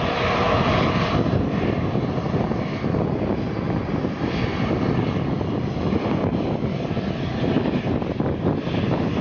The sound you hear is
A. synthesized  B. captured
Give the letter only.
B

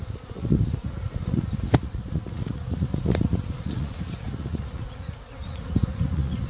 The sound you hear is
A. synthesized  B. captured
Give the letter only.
A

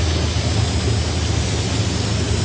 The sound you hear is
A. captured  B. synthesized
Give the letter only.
A